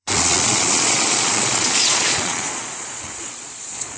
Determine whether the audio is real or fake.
fake